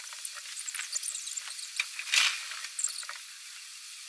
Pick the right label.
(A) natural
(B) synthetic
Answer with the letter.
A